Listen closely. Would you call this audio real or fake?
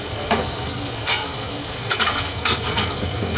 fake